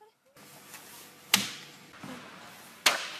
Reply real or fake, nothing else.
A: real